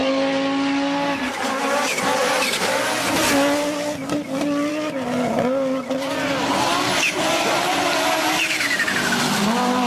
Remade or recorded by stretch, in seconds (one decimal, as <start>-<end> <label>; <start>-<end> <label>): 0.0-9.9 recorded